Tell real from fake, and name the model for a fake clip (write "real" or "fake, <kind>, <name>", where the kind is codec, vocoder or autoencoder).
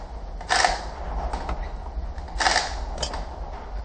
real